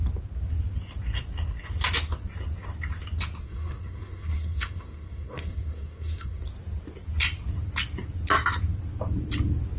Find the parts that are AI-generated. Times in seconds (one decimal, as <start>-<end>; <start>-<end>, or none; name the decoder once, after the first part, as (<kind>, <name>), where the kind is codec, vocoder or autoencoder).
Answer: 3.4-6.4 (codec, SNAC)